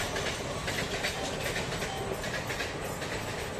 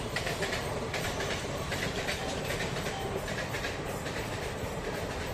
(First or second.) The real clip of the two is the first